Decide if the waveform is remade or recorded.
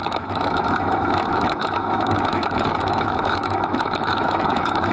remade